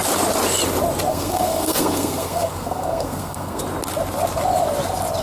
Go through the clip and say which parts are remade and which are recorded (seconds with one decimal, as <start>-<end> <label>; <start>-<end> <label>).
0.0-1.1 recorded; 1.1-3.6 remade; 3.6-5.2 recorded